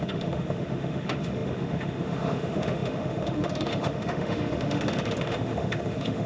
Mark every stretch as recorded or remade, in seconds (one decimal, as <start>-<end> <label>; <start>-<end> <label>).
0.0-6.3 remade